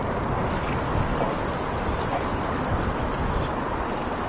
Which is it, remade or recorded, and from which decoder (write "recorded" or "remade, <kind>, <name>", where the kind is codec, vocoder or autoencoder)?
recorded